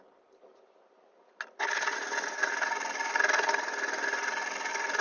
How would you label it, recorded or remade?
recorded